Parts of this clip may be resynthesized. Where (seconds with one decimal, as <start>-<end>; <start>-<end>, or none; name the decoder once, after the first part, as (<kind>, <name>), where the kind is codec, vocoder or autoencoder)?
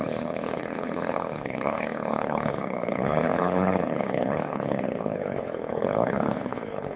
0.0-7.0 (codec, HILCodec)